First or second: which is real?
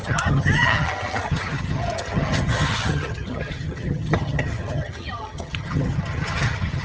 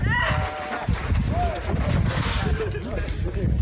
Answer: second